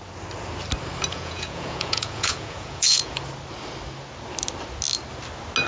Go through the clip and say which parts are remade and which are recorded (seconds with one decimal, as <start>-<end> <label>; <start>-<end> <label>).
0.0-1.1 recorded; 1.1-3.2 remade; 3.2-5.7 recorded